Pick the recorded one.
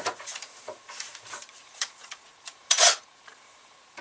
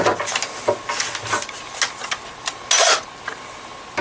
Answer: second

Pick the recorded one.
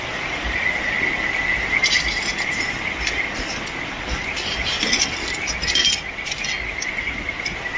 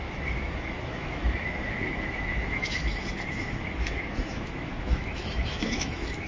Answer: first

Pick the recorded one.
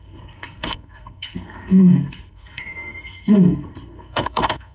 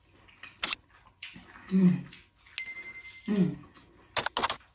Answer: second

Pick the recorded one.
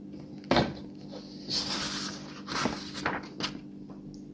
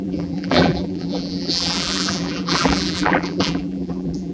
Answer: first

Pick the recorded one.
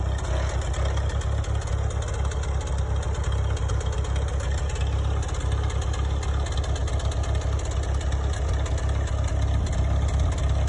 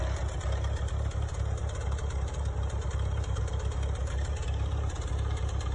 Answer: first